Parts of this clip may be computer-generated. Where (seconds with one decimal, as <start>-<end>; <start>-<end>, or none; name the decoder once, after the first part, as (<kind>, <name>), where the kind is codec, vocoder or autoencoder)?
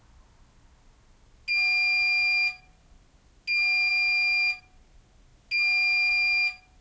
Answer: none